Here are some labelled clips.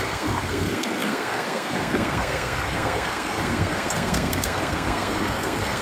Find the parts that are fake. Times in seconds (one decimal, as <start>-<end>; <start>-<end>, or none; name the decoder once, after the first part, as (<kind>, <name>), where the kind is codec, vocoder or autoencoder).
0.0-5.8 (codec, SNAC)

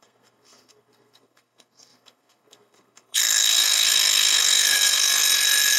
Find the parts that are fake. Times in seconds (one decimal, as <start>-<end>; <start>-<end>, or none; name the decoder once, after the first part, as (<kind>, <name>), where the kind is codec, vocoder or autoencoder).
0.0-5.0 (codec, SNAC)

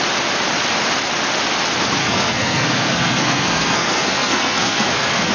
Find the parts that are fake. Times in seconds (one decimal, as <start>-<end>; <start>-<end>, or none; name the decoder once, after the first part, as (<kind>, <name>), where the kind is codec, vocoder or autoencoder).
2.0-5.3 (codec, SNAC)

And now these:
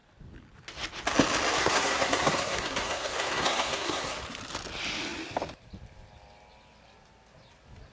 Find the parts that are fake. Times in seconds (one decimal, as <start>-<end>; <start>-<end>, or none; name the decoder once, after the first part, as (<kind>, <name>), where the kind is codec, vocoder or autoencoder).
1.6-4.2 (codec, SNAC)